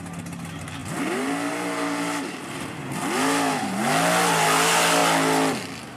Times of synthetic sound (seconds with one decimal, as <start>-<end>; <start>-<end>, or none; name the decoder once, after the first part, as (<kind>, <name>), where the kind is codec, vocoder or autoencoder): none